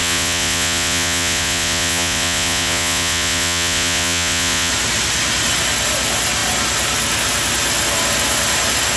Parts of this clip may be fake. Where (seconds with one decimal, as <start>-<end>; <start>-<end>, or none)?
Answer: 0.0-4.7